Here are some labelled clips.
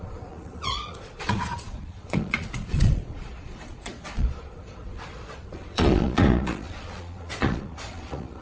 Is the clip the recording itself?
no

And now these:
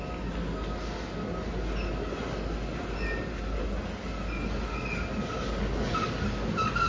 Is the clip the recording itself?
yes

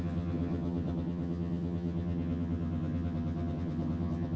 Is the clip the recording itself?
no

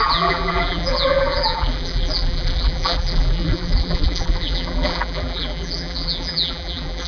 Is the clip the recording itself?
no